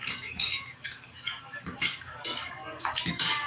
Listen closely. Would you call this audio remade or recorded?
remade